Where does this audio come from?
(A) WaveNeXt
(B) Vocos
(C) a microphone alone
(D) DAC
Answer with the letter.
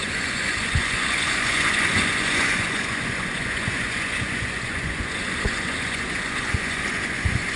B